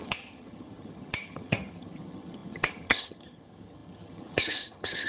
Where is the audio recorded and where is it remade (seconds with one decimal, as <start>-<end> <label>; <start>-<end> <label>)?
0.0-5.1 remade